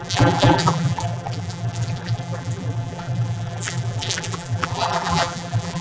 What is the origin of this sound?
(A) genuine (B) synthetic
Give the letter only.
B